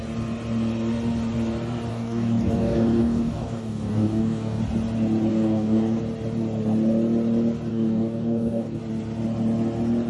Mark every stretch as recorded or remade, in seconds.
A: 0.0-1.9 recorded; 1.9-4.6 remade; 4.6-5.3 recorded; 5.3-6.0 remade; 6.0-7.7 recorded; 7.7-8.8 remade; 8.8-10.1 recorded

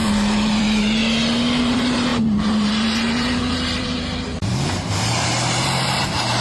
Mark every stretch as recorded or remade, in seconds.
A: 0.0-1.0 remade; 1.0-1.6 recorded; 1.6-6.4 remade

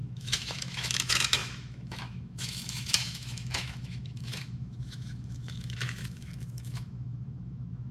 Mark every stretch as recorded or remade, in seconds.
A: 0.0-7.9 remade

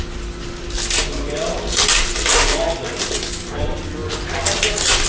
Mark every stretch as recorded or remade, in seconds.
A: 0.0-5.1 recorded

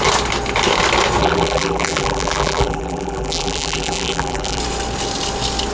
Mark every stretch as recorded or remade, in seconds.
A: 0.0-1.2 recorded; 1.2-4.6 remade; 4.6-5.7 recorded